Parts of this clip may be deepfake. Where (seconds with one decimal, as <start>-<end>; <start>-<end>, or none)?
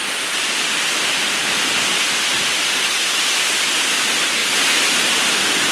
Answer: none